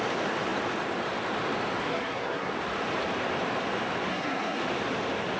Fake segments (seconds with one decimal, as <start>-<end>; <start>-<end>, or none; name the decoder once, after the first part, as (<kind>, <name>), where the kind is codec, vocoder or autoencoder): 1.8-2.5 (codec, SNAC); 4.1-4.6